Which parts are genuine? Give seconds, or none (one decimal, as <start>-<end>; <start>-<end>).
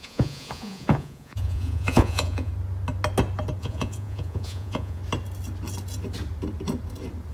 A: 2.5-3.6; 5.0-7.3